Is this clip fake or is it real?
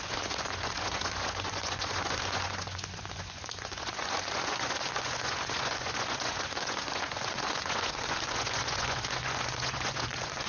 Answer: fake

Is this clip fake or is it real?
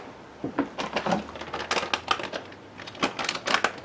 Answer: real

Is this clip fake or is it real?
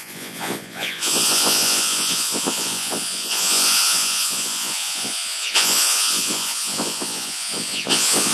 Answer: fake